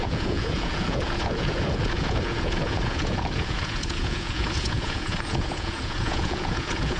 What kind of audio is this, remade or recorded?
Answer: remade